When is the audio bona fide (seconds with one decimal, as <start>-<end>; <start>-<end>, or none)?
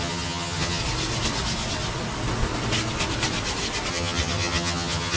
0.8-3.9